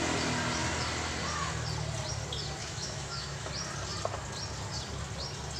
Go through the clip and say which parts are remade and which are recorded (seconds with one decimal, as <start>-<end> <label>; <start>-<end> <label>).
0.0-2.6 recorded; 2.6-3.5 remade; 3.5-5.6 recorded